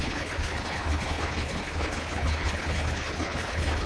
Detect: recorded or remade remade